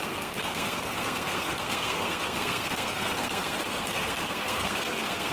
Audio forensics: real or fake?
fake